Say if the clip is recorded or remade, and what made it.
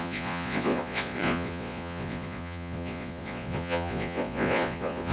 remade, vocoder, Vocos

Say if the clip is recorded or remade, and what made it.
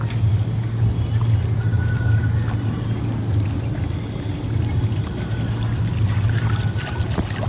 recorded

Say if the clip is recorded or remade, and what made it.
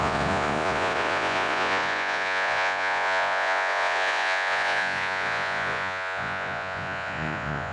remade, vocoder, Vocos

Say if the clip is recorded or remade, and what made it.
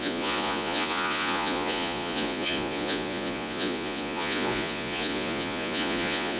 remade, vocoder, Vocos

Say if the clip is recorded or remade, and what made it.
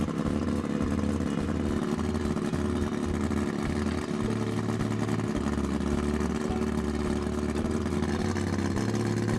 recorded